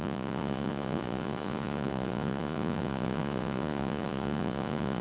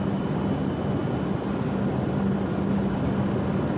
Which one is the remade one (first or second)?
first